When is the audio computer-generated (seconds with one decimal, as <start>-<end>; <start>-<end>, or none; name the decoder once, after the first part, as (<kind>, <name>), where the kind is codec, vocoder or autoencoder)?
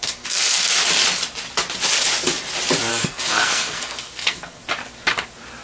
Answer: 0.0-0.8 (codec, SNAC); 2.9-4.6